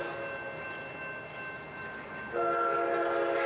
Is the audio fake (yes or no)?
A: no